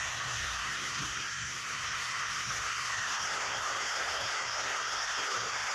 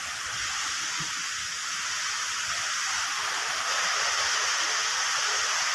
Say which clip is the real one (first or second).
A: second